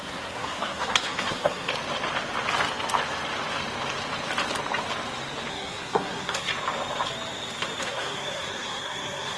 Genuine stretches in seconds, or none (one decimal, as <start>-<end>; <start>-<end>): 1.7-5.5; 6.5-7.8